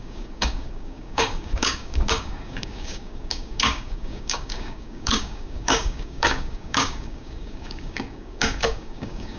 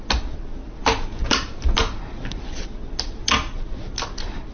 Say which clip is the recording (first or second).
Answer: second